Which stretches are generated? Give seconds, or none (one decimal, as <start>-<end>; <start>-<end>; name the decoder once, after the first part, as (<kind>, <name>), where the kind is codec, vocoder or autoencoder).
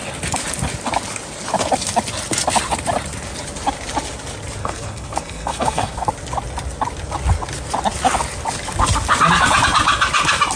4.6-6.1 (codec, SNAC)